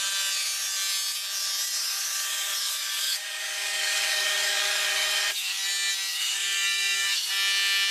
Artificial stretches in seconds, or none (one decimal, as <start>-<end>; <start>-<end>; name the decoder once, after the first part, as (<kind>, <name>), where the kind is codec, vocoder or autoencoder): 1.8-5.6 (codec, DAC); 6.1-7.3